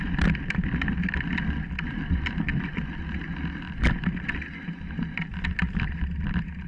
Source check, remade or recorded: recorded